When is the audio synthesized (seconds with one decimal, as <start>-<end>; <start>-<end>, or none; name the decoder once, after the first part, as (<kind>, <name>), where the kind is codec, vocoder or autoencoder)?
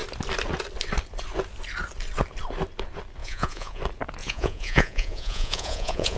3.2-3.8 (vocoder, Vocos); 4.2-6.2